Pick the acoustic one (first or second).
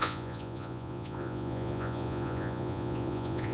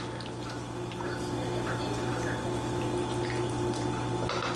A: second